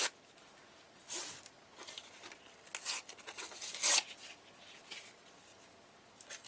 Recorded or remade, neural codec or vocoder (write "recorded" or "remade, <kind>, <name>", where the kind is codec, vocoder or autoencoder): recorded